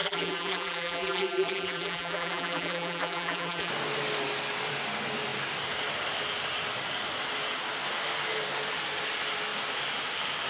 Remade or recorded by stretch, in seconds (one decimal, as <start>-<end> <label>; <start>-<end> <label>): 0.0-3.7 remade; 3.7-10.5 recorded